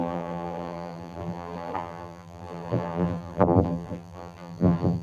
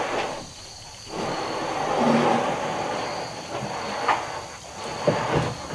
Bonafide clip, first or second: second